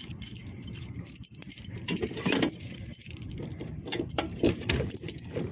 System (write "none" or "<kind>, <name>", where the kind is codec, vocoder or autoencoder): vocoder, BigVGAN v2